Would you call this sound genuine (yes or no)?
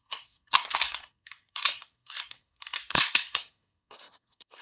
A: no